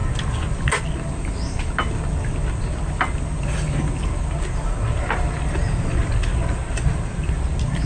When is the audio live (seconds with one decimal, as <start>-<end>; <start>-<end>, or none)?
0.0-7.9